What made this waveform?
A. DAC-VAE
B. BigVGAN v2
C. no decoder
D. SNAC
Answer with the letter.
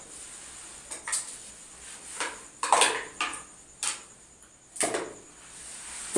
C